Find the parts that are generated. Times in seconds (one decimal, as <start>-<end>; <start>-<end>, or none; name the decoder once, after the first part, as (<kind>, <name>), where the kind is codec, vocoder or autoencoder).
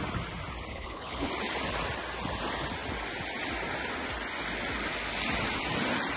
0.7-1.3 (codec, HILCodec)